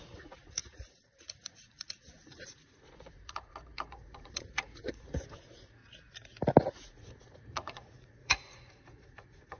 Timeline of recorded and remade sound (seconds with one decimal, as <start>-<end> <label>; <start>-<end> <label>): 0.0-5.8 remade; 5.8-6.6 recorded; 6.6-9.6 remade